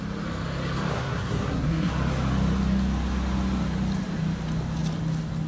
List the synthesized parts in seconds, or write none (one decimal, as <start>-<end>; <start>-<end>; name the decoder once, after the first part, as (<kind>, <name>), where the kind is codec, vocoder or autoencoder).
0.9-1.9 (codec, SNAC)